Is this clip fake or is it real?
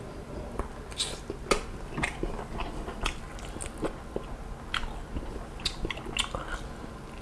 real